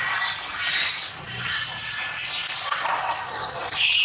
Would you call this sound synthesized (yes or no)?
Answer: yes